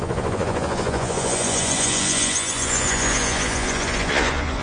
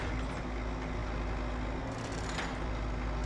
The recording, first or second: second